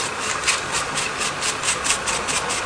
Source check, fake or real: real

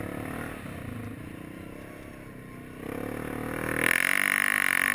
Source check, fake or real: real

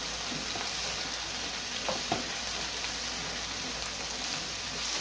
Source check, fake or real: real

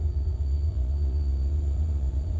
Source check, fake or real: fake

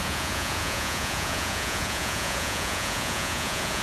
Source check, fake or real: fake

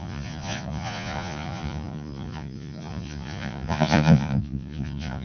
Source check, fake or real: fake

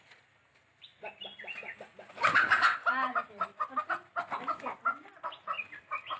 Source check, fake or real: real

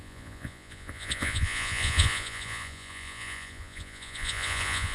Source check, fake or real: fake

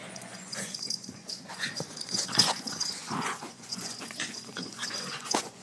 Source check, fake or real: fake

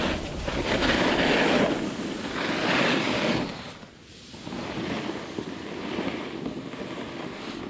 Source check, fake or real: real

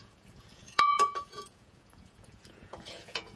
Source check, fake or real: fake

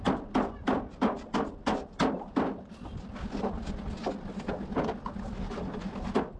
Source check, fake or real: real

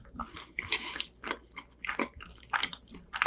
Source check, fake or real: real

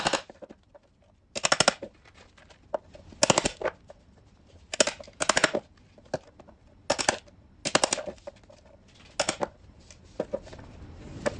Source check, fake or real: real